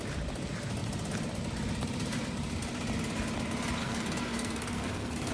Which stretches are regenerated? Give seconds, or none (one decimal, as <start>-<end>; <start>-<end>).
3.8-5.3